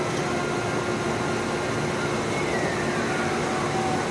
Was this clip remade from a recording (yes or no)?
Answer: no